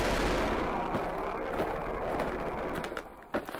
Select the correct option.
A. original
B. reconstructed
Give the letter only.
A